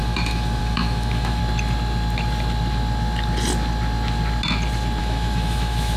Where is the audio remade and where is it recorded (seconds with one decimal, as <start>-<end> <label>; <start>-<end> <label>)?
0.0-1.4 remade; 1.4-5.0 recorded; 5.0-6.0 remade

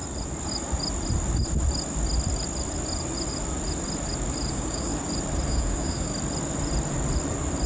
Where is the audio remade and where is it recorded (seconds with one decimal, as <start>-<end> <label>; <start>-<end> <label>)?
0.0-4.5 recorded; 4.5-4.9 remade; 4.9-5.5 recorded; 5.5-6.1 remade; 6.1-7.7 recorded

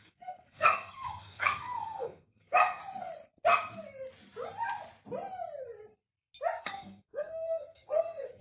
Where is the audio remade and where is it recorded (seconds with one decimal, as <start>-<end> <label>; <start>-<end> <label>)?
0.0-2.8 remade; 2.8-6.6 recorded; 6.6-8.4 remade

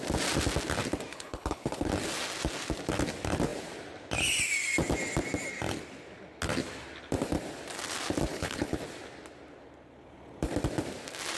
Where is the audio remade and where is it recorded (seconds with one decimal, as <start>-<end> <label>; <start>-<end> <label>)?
0.0-1.1 recorded; 1.1-1.9 remade; 1.9-8.3 recorded; 8.3-8.8 remade; 8.8-11.4 recorded

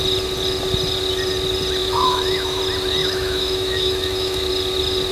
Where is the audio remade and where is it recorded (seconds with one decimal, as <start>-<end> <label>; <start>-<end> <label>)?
0.0-1.8 recorded; 1.8-2.6 remade; 2.6-3.0 recorded; 3.0-4.5 remade; 4.5-5.1 recorded

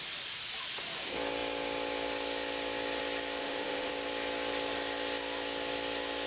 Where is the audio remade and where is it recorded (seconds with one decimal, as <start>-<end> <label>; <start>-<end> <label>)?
0.0-3.4 recorded; 3.4-3.9 remade; 3.9-6.3 recorded

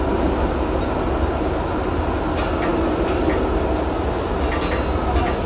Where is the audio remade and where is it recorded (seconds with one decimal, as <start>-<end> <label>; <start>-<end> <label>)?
0.0-5.5 recorded